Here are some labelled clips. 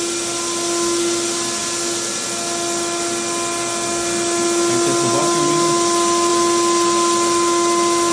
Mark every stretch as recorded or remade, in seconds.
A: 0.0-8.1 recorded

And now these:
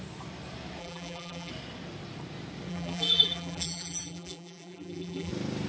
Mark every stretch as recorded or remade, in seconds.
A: 0.0-0.8 recorded; 0.8-1.5 remade; 1.5-2.7 recorded; 2.7-5.3 remade; 5.3-5.7 recorded